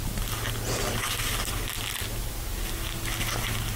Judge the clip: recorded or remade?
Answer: recorded